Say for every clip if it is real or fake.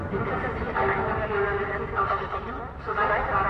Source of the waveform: real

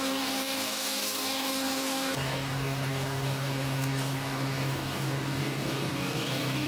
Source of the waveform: fake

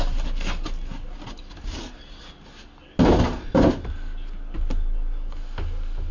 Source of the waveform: real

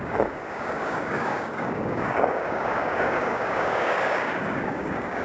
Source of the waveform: fake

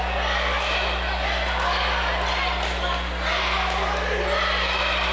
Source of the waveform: real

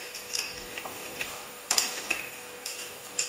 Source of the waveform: fake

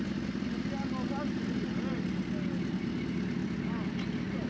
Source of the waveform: real